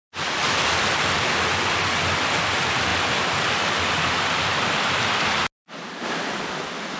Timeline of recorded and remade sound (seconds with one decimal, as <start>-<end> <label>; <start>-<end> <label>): 0.0-7.0 recorded